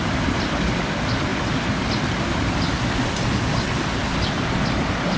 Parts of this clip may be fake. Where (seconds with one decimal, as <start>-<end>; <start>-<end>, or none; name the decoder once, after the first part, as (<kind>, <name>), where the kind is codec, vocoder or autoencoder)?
none